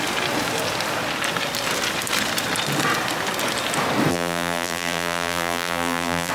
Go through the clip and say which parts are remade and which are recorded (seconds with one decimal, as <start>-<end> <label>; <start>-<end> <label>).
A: 0.0-4.1 recorded; 4.1-6.3 remade